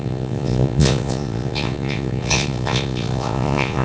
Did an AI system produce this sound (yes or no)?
yes